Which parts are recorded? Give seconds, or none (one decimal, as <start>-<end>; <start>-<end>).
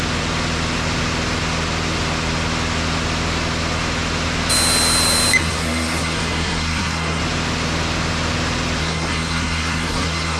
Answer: 0.0-5.4; 7.2-8.8